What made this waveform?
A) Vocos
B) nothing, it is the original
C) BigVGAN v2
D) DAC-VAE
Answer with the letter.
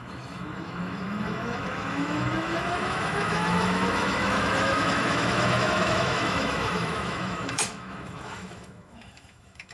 D